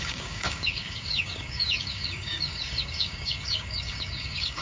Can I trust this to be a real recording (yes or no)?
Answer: no